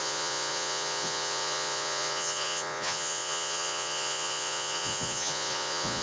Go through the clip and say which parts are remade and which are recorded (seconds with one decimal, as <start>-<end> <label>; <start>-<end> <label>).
0.0-6.0 remade